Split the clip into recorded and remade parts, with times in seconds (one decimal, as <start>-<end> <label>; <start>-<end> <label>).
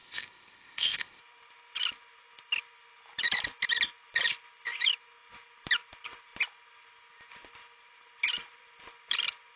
0.0-1.2 remade; 1.2-9.6 recorded